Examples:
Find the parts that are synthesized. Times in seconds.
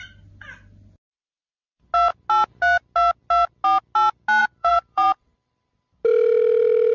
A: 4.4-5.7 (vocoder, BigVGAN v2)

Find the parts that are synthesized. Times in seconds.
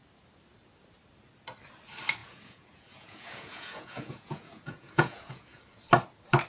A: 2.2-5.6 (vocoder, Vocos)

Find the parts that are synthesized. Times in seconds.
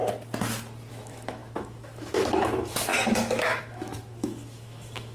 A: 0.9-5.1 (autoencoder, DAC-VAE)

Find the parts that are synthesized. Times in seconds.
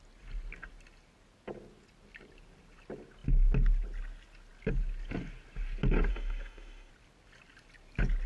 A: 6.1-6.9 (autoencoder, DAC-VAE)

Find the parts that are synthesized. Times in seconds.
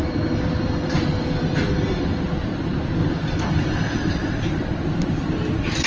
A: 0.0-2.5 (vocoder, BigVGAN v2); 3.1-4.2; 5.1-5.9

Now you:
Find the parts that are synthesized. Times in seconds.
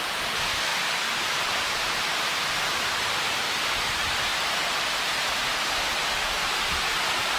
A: 0.7-3.7 (vocoder, BigVGAN v2); 4.3-5.4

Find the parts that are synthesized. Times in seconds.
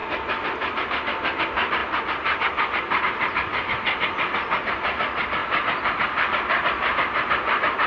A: none